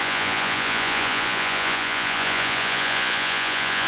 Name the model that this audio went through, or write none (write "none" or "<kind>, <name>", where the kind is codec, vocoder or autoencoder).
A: vocoder, Vocos